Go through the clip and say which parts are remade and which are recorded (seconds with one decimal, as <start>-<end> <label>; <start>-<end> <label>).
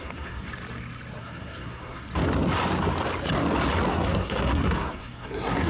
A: 0.0-0.5 remade; 0.5-1.2 recorded; 1.2-2.1 remade; 2.1-3.9 recorded; 3.9-5.7 remade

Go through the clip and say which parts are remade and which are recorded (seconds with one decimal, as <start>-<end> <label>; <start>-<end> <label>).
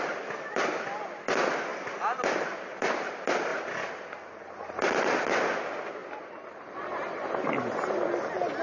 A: 0.0-8.6 recorded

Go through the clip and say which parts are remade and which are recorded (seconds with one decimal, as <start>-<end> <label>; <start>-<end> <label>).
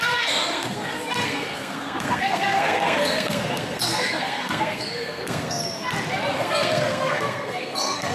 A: 0.0-5.6 remade; 5.6-6.3 recorded; 6.3-8.1 remade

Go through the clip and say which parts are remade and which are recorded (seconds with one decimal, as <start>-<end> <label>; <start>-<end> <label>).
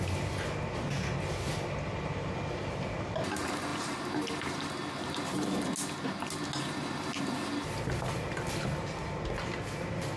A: 0.0-10.2 recorded